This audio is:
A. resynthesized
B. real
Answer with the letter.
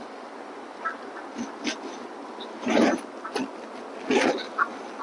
B